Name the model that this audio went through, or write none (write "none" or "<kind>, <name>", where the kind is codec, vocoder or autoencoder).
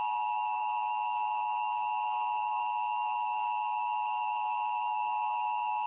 codec, DAC